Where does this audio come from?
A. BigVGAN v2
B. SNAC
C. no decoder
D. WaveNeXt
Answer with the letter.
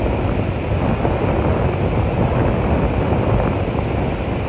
C